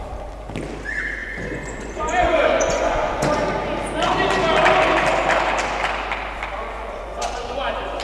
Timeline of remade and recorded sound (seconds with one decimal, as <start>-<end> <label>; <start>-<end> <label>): 0.0-1.2 recorded; 1.2-3.3 remade; 3.3-6.6 recorded; 6.6-7.6 remade; 7.6-8.0 recorded